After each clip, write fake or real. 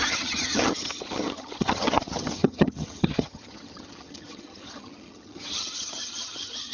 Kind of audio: fake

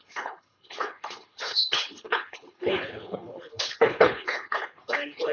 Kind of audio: fake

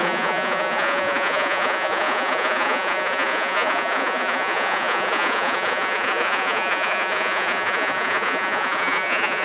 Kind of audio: fake